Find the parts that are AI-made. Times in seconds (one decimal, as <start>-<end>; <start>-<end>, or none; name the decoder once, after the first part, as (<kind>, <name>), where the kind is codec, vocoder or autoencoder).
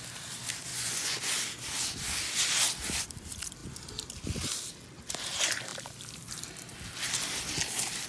0.7-1.2 (vocoder, Vocos)